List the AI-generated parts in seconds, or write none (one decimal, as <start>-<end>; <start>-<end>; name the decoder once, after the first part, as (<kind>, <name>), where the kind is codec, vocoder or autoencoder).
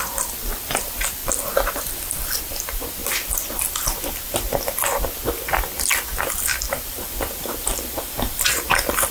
0.0-3.0 (vocoder, BigVGAN v2); 6.3-9.1